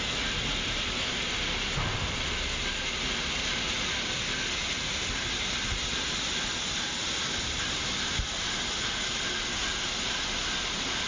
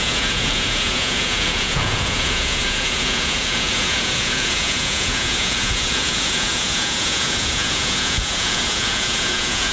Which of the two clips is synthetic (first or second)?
second